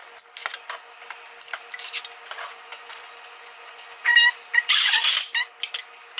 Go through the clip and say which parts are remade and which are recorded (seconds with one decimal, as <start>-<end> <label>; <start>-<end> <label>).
0.0-2.3 recorded; 2.3-4.1 remade; 4.1-4.6 recorded; 4.6-5.0 remade; 5.0-6.2 recorded